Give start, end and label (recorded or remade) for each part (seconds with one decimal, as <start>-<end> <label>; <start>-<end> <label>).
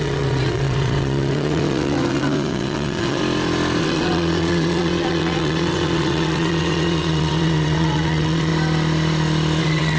0.0-3.2 remade; 3.2-3.8 recorded; 3.8-8.5 remade; 8.5-9.6 recorded; 9.6-10.0 remade